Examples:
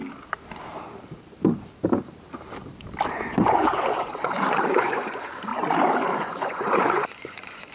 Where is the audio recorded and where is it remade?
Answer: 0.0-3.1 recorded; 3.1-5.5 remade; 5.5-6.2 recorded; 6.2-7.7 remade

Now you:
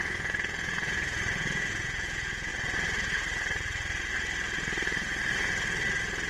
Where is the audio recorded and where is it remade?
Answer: 0.0-2.5 remade; 2.5-6.3 recorded

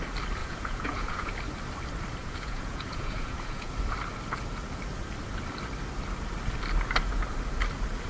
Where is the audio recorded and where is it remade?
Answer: 0.0-0.4 recorded; 0.4-1.3 remade; 1.3-2.2 recorded; 2.2-3.7 remade; 3.7-8.1 recorded

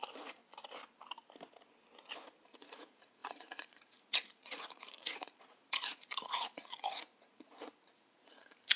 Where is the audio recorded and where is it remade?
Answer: 0.0-0.4 remade; 0.4-2.5 recorded; 2.5-8.8 remade

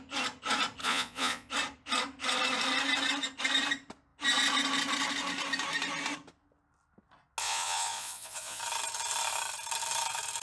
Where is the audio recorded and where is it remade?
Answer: 0.0-0.8 recorded; 0.8-1.5 remade; 1.5-7.4 recorded; 7.4-8.6 remade; 8.6-10.4 recorded

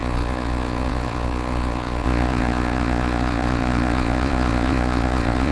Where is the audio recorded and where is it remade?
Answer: 0.0-5.5 remade

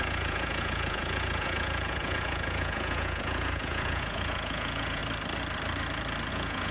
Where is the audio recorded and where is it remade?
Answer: 0.0-5.0 remade; 5.0-6.3 recorded; 6.3-6.7 remade

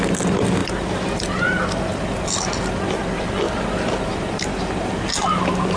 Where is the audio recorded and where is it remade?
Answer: 0.0-5.8 recorded